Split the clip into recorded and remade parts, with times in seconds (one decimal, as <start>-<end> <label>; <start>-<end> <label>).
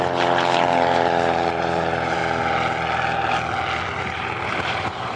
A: 0.0-2.2 remade; 2.2-4.0 recorded; 4.0-5.2 remade